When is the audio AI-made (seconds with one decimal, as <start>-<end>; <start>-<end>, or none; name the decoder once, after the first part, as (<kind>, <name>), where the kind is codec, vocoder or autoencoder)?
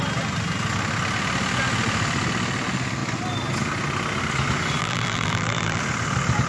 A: 4.8-5.8 (vocoder, BigVGAN v2)